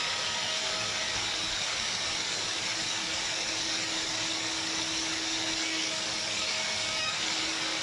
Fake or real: fake